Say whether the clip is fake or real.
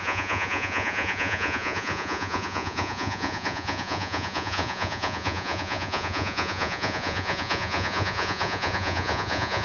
fake